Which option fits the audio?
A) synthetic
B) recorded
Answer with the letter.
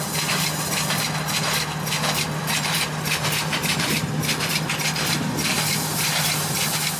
A